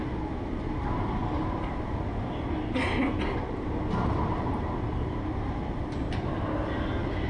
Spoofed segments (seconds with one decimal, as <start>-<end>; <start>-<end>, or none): none